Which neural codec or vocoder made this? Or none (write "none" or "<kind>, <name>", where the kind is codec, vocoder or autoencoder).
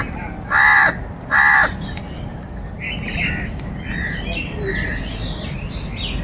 none